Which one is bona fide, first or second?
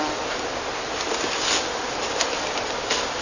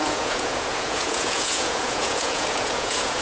first